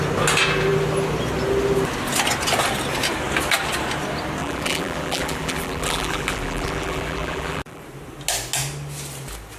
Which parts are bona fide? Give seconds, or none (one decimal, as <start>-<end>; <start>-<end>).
0.0-4.4; 7.8-9.6